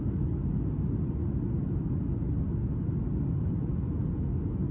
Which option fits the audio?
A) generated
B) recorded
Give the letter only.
B